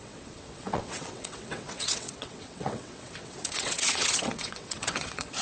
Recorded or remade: remade